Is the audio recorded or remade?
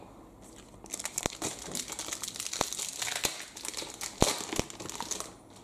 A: recorded